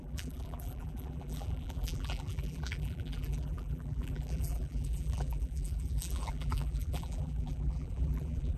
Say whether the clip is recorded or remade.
remade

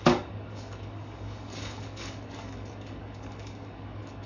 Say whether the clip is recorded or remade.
remade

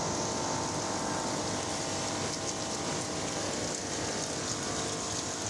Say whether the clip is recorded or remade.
recorded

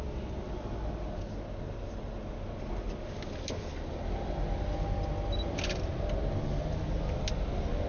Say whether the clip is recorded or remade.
recorded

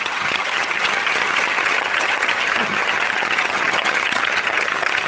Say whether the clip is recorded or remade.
remade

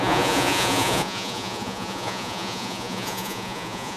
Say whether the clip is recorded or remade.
remade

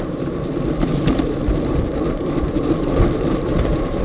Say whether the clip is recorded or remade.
remade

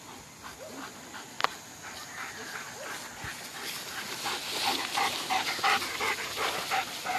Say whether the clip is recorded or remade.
recorded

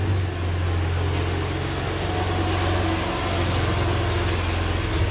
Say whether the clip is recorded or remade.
recorded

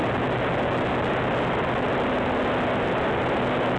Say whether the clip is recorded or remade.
recorded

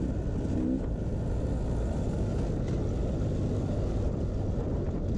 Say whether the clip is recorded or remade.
recorded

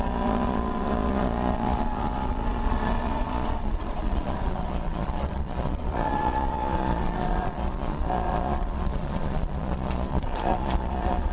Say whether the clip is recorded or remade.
remade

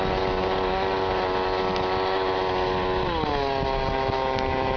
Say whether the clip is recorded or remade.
recorded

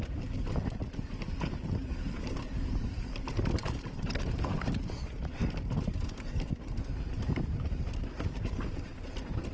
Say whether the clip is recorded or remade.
remade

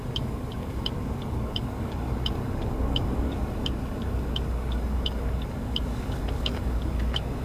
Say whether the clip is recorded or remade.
remade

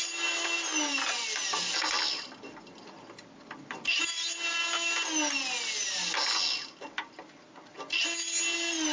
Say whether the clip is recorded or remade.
recorded